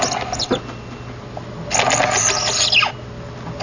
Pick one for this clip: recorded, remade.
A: recorded